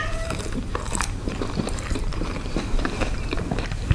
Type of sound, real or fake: fake